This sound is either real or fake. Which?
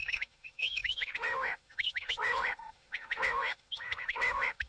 fake